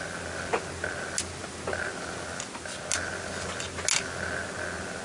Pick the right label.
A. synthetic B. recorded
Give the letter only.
B